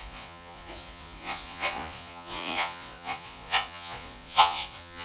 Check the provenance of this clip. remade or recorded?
remade